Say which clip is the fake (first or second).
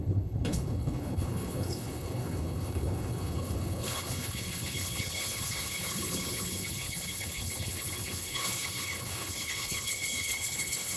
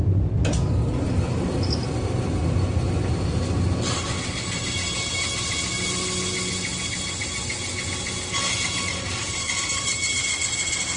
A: first